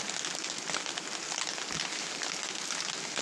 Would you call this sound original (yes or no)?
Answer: yes